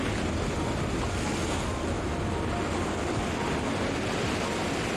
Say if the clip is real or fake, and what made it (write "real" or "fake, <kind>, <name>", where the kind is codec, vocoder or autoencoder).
real